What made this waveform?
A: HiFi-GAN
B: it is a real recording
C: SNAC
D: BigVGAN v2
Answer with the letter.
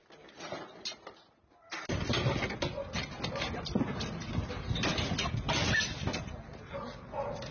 B